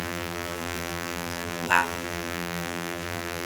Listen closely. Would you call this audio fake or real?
fake